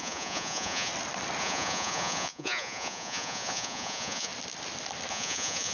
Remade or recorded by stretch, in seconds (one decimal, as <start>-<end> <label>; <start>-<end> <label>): 0.0-0.9 remade; 0.9-1.4 recorded; 1.4-4.3 remade; 4.3-5.1 recorded; 5.1-5.7 remade